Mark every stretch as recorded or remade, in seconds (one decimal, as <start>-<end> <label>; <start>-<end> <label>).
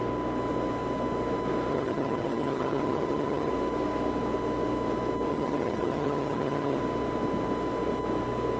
0.0-1.7 recorded; 1.7-3.5 remade; 3.5-5.3 recorded; 5.3-6.8 remade; 6.8-8.6 recorded